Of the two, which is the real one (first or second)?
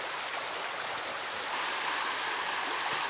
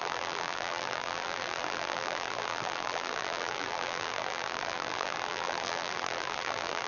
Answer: first